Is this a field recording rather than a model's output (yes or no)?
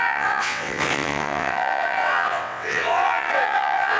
no